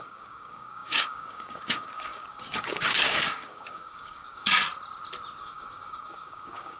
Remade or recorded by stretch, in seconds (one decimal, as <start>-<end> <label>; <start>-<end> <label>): 0.0-4.6 remade; 4.6-5.4 recorded; 5.4-6.8 remade